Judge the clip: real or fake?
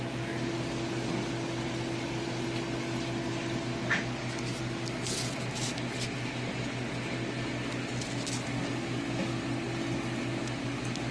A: real